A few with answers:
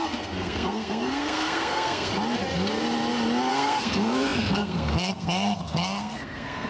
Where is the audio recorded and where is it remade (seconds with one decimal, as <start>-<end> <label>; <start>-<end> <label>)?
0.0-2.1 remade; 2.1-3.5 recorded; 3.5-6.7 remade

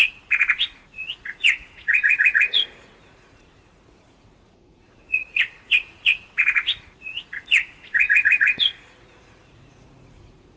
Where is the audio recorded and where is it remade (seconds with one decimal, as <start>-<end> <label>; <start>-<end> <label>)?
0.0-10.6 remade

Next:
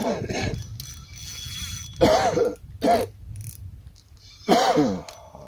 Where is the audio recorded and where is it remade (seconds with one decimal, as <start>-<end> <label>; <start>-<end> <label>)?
0.0-5.5 recorded

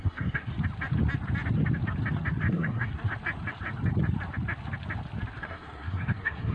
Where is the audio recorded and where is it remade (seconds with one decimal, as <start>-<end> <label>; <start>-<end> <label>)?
0.0-0.5 remade; 0.5-2.5 recorded; 2.5-2.9 remade; 2.9-5.4 recorded; 5.4-6.5 remade

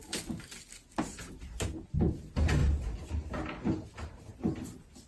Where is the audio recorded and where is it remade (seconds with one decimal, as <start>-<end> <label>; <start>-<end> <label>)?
0.0-5.1 recorded

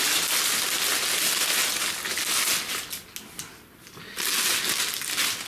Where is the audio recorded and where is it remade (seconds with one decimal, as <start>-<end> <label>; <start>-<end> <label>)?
0.0-5.5 recorded

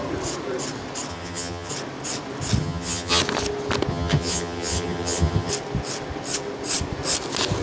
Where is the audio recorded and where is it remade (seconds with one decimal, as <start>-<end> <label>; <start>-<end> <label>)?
0.0-1.1 recorded; 1.1-1.7 remade; 1.7-2.6 recorded; 2.6-3.2 remade; 3.2-3.9 recorded; 3.9-5.5 remade; 5.5-7.6 recorded